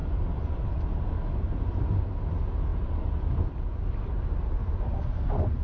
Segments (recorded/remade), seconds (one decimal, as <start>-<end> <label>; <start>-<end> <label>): 0.0-0.7 remade; 0.7-2.7 recorded; 2.7-5.0 remade; 5.0-5.6 recorded